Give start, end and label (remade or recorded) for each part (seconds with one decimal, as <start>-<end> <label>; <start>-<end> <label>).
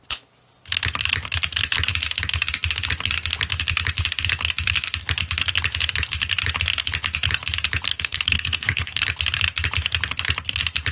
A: 0.0-7.9 recorded; 7.9-9.0 remade; 9.0-10.9 recorded